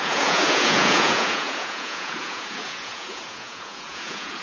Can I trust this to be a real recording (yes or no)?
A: no